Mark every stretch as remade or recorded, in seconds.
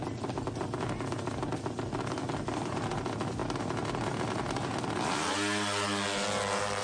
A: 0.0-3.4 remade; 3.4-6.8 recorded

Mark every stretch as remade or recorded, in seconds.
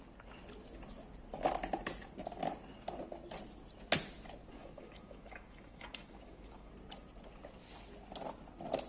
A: 0.0-4.6 recorded; 4.6-6.7 remade; 6.7-8.9 recorded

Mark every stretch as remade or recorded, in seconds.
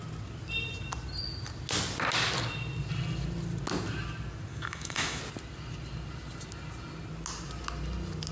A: 0.0-4.5 recorded; 4.5-5.2 remade; 5.2-8.3 recorded